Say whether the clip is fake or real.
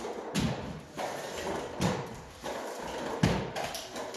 real